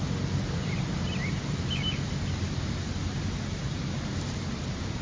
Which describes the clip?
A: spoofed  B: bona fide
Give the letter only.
A